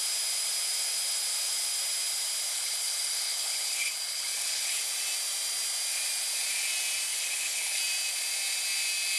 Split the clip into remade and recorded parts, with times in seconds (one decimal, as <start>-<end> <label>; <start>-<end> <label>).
0.0-2.5 recorded; 2.5-4.8 remade; 4.8-7.1 recorded; 7.1-7.8 remade; 7.8-9.2 recorded